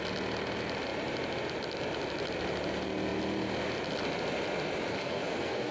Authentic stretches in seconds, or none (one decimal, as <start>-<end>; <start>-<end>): 0.0-4.9